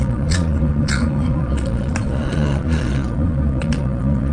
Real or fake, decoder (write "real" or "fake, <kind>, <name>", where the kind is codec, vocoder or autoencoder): fake, vocoder, Vocos